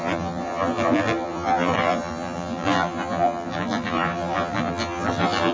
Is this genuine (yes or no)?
no